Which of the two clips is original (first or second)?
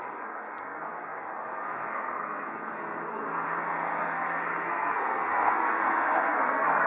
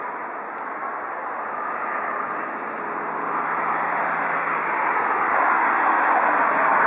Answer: second